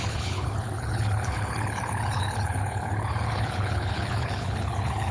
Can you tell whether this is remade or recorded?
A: remade